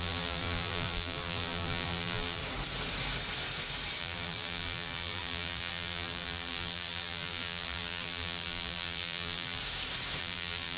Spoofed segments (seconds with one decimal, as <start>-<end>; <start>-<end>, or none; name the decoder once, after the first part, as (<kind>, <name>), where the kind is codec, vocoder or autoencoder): 0.0-2.4 (vocoder, BigVGAN v2); 4.0-9.6; 10.2-10.8